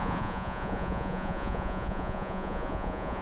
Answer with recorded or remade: remade